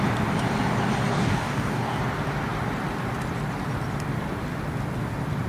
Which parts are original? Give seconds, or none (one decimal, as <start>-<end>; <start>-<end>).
0.0-1.1; 2.0-5.5